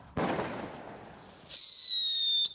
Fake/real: real